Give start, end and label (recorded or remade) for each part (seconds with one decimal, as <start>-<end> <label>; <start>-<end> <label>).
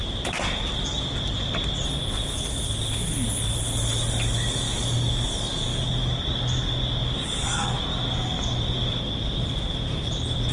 0.0-5.7 recorded; 5.7-6.3 remade; 6.3-10.5 recorded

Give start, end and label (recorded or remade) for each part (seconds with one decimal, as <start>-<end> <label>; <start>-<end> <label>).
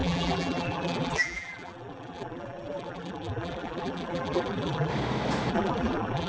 0.0-4.9 remade; 4.9-5.5 recorded; 5.5-6.3 remade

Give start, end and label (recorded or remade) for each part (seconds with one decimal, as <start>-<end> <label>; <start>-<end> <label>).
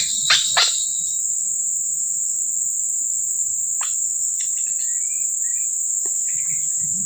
0.0-3.1 recorded; 3.1-4.7 remade; 4.7-7.1 recorded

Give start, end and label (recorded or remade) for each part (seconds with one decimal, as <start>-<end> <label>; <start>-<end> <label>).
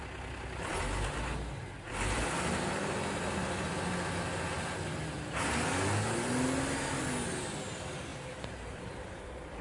0.0-8.1 recorded; 8.1-9.2 remade; 9.2-9.6 recorded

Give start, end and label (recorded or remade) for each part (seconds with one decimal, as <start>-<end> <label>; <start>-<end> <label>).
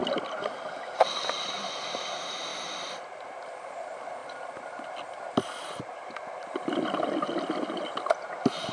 0.0-1.2 remade; 1.2-2.5 recorded; 2.5-3.3 remade; 3.3-4.2 recorded; 4.2-5.2 remade; 5.2-8.7 recorded